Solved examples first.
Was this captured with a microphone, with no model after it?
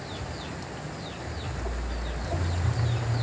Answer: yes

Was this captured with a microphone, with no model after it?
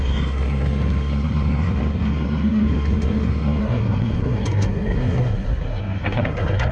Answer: no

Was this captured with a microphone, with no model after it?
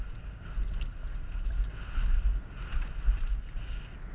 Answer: yes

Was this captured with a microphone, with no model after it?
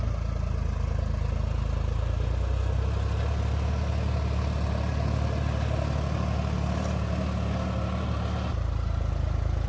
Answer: yes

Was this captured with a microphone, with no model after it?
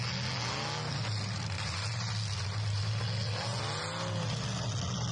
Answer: yes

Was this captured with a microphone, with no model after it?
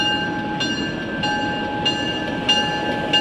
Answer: yes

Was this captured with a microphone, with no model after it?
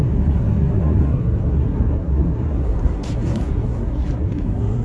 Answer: no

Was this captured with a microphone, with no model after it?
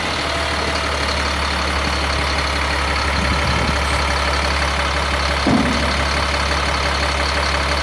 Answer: yes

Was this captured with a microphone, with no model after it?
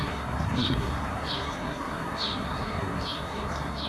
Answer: no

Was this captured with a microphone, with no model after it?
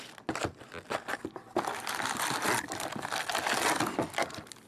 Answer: yes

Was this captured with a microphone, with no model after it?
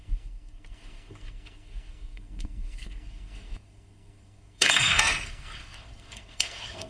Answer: no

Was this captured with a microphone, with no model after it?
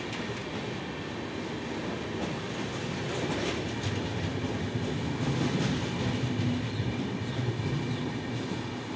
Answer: yes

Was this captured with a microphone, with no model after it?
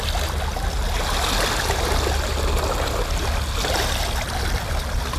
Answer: yes